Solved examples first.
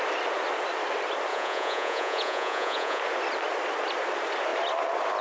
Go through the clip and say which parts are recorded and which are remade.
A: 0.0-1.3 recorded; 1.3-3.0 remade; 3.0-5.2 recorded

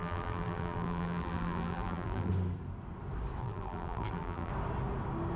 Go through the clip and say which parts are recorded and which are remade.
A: 0.0-2.3 remade; 2.3-3.4 recorded; 3.4-4.5 remade; 4.5-5.4 recorded

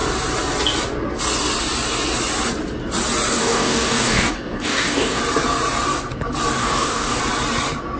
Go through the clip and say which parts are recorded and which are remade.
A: 0.0-3.4 recorded; 3.4-5.2 remade; 5.2-6.6 recorded; 6.6-7.2 remade; 7.2-8.0 recorded

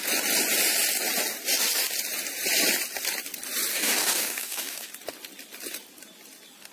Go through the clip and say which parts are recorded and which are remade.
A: 0.0-3.7 recorded; 3.7-4.9 remade; 4.9-6.7 recorded